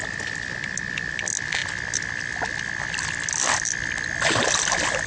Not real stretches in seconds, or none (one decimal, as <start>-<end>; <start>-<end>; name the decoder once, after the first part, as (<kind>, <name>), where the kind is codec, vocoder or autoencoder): none

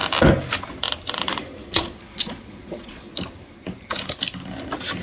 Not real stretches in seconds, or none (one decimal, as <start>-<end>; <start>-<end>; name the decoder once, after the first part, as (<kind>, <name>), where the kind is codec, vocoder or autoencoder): 1.6-3.1 (vocoder, Vocos)

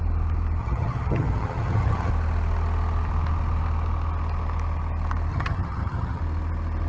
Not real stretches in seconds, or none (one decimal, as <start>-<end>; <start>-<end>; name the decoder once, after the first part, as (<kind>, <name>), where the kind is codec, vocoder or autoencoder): 0.6-2.1 (vocoder, HiFi-GAN); 5.3-6.2

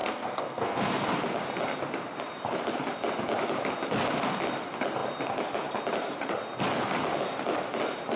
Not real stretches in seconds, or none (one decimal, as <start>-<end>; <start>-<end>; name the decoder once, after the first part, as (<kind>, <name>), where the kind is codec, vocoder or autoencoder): 0.0-0.9 (codec, SNAC)

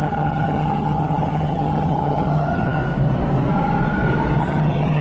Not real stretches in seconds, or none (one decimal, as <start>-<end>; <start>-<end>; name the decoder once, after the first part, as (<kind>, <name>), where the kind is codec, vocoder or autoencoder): 0.0-2.8 (vocoder, HiFi-GAN); 4.4-5.0

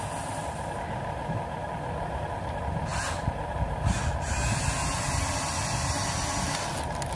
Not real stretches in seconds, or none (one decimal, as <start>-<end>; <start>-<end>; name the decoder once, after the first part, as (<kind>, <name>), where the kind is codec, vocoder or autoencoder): none